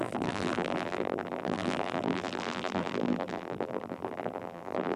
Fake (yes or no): yes